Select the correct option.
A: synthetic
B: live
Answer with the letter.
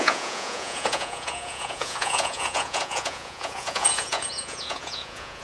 A